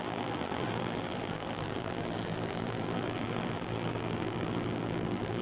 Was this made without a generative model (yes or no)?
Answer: no